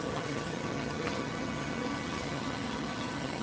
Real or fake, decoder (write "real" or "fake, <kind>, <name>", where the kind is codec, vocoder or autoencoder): fake, vocoder, HiFi-GAN